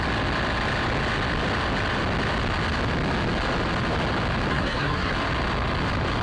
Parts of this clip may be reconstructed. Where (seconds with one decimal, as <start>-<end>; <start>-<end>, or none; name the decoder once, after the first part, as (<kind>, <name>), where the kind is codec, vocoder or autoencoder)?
4.5-5.1 (codec, SNAC)